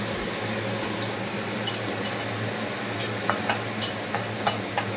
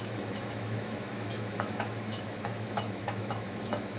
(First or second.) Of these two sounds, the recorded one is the first